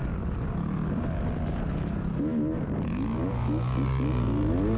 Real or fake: real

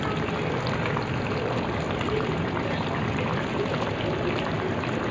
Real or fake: real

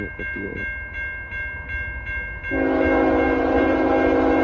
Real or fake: real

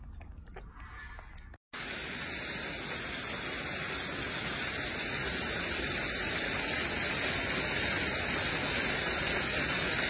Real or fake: real